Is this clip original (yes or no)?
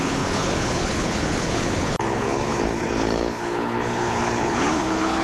no